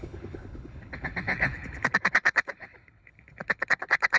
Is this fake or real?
fake